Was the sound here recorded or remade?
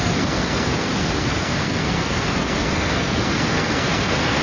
remade